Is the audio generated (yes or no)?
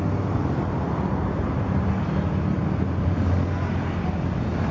no